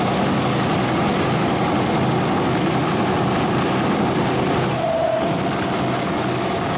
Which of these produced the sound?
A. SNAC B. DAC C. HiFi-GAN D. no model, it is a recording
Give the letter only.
D